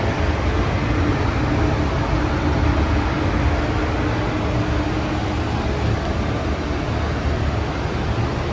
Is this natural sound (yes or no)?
yes